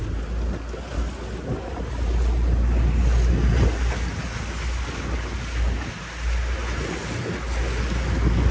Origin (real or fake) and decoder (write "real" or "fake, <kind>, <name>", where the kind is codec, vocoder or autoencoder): real